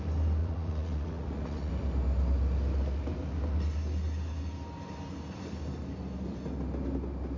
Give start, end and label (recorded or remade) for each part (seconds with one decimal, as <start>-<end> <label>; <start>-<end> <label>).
0.0-0.4 recorded; 0.4-1.7 remade; 1.7-7.4 recorded